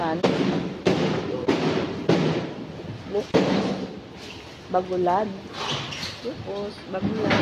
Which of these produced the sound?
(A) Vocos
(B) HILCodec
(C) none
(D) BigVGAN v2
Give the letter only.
C